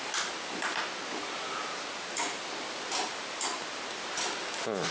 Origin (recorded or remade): recorded